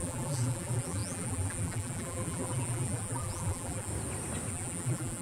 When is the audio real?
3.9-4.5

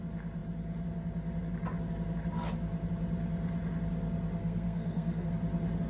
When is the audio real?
0.0-4.4; 5.3-5.9

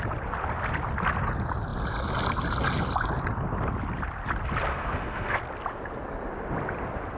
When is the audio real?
0.0-4.7; 5.4-7.2

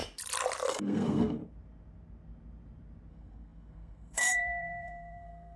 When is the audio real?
0.0-0.7; 1.4-3.1